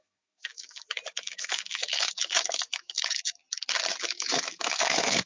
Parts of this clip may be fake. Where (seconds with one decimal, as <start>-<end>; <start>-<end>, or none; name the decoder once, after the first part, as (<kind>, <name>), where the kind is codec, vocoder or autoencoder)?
0.0-3.4 (autoencoder, DAC-VAE); 4.0-5.3